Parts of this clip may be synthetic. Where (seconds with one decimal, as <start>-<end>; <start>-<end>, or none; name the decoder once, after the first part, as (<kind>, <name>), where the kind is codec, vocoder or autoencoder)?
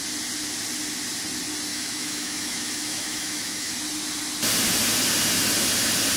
1.7-3.7 (autoencoder, DAC-VAE)